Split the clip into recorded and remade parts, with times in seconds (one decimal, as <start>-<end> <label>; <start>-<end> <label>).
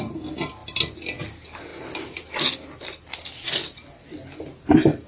0.0-5.1 recorded